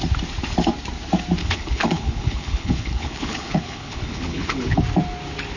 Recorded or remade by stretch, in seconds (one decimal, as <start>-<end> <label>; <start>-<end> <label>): 0.0-1.4 recorded; 1.4-4.8 remade; 4.8-5.6 recorded